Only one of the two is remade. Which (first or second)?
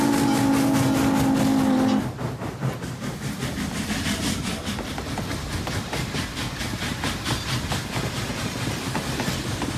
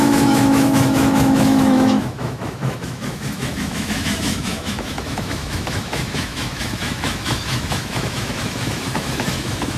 second